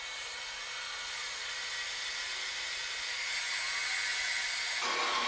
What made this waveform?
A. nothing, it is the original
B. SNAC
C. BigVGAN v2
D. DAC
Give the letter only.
A